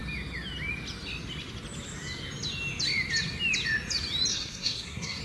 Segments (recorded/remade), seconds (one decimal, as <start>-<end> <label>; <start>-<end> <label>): 0.0-4.3 recorded; 4.3-5.2 remade